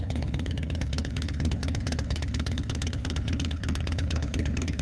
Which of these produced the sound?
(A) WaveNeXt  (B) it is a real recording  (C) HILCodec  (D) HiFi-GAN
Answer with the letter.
C